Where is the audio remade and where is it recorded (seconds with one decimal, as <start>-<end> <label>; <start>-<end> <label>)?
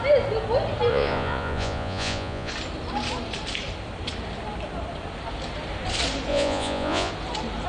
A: 0.0-0.9 recorded; 0.9-2.5 remade; 2.5-6.3 recorded; 6.3-7.1 remade; 7.1-7.7 recorded